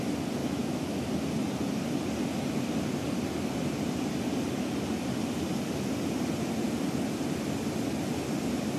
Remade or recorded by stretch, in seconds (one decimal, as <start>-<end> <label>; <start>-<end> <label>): 0.0-0.4 recorded; 0.4-1.1 remade; 1.1-8.8 recorded